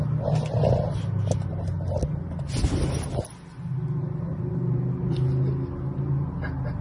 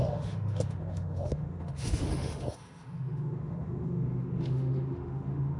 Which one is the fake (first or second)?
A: second